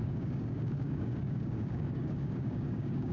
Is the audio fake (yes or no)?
yes